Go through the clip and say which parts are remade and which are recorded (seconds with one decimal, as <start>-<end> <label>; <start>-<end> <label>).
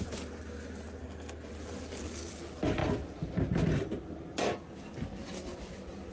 0.0-1.0 recorded; 1.0-1.5 remade; 1.5-6.1 recorded